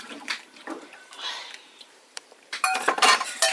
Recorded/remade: remade